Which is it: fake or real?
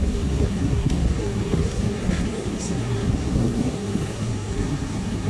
fake